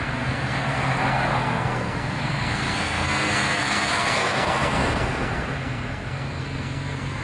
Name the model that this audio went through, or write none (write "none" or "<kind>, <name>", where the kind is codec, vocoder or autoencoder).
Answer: codec, SNAC